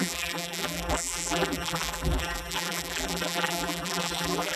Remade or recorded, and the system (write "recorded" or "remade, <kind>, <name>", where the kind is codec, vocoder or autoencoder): remade, vocoder, BigVGAN v2